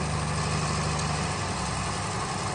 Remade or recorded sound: recorded